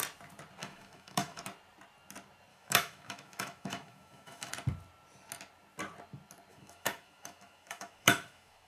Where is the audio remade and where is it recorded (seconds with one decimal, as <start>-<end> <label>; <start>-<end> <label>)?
0.0-0.6 recorded; 0.6-1.4 remade; 1.4-2.5 recorded; 2.5-4.5 remade; 4.5-6.5 recorded; 6.5-8.7 remade